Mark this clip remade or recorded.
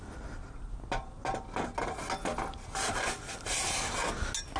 recorded